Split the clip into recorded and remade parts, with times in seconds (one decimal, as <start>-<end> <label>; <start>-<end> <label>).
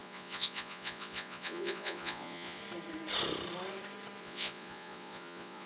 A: 0.0-2.6 remade; 2.6-4.2 recorded; 4.2-5.7 remade